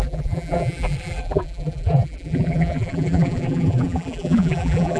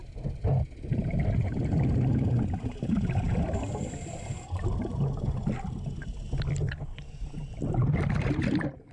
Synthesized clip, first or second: first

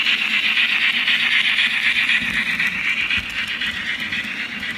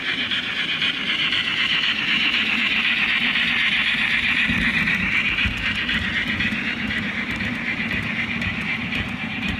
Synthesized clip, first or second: second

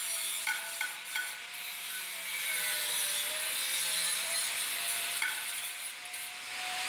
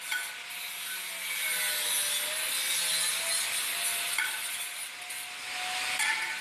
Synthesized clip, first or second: first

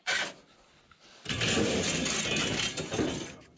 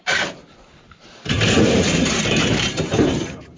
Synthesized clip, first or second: second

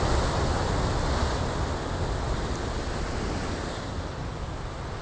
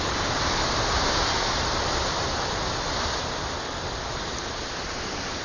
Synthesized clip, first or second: second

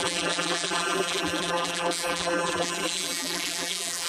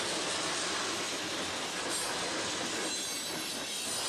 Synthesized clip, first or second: first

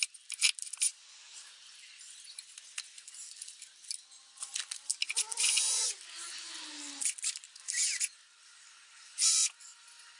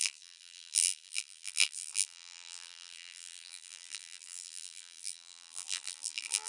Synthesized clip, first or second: second